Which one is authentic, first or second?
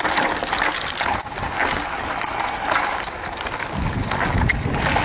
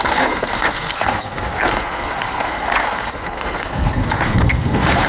first